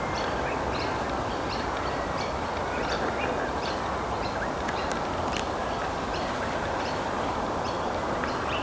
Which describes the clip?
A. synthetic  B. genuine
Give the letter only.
A